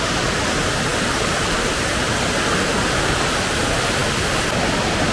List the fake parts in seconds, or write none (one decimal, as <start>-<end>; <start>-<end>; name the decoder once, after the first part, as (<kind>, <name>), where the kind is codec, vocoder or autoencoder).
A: none